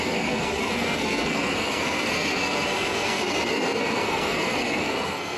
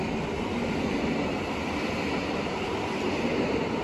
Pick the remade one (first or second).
first